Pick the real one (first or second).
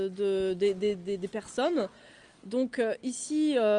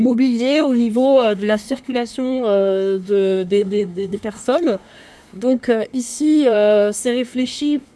first